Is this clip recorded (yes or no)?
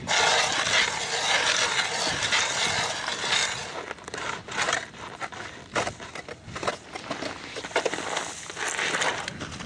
yes